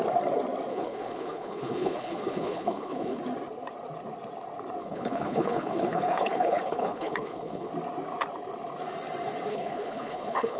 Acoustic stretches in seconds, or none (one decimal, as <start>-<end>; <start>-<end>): 0.0-0.7; 3.2-4.8; 7.7-9.5